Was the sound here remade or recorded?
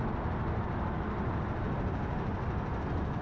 recorded